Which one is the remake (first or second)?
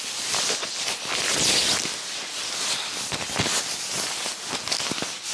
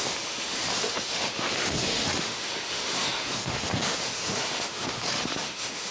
second